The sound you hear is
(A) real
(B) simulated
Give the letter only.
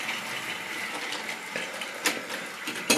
A